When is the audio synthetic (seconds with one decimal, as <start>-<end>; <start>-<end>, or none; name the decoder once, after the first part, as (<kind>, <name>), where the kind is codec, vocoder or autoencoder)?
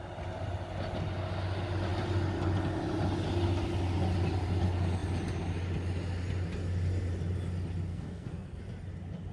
7.9-8.6 (codec, SNAC)